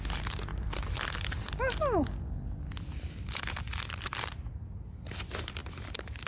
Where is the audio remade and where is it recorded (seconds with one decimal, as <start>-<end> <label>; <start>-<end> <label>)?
0.0-0.5 recorded; 0.5-1.5 remade; 1.5-2.0 recorded; 2.0-4.6 remade; 4.6-6.3 recorded